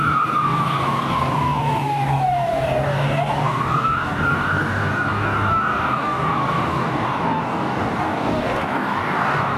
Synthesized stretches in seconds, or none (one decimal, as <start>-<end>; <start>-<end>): 0.0-9.6